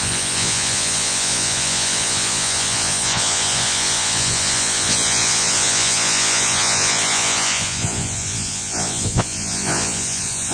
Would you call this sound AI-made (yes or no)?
yes